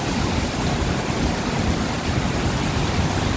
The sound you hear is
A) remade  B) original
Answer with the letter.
B